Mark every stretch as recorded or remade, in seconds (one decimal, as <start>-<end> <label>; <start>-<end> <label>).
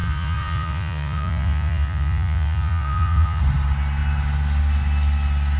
0.0-3.4 remade; 3.4-5.6 recorded